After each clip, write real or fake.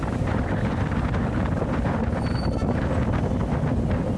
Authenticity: real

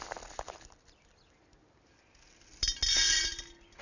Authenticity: real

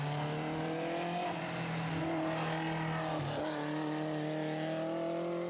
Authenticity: real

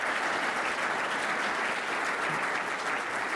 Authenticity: real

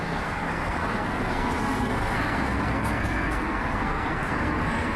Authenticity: fake